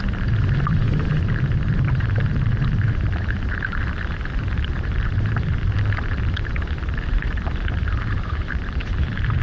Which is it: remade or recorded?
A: remade